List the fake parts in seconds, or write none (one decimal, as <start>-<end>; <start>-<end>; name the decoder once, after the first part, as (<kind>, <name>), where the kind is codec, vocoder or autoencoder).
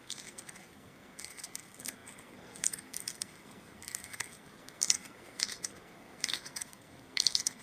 0.0-7.6 (codec, SNAC)